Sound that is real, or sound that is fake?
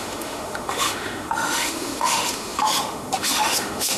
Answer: fake